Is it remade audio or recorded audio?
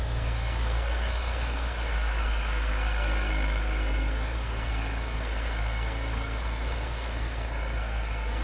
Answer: remade